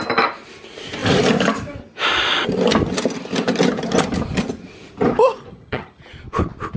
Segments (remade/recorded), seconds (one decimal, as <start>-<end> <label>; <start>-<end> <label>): 0.0-5.5 recorded; 5.5-6.0 remade; 6.0-6.8 recorded